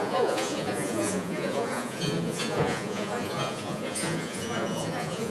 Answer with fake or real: fake